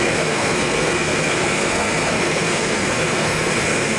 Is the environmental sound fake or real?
fake